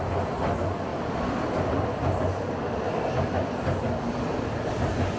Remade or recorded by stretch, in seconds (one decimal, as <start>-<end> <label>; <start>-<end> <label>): 0.0-5.2 recorded